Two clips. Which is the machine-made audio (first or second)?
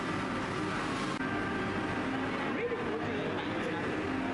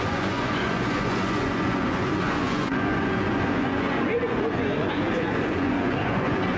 second